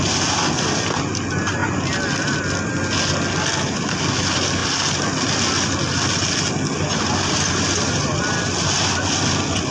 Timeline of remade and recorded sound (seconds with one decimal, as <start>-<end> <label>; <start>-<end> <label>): 0.0-9.7 recorded